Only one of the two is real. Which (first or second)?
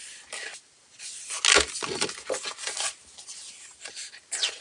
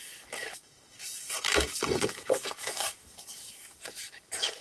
first